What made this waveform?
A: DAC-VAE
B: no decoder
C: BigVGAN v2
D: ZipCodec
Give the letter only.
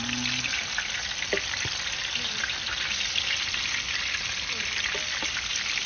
B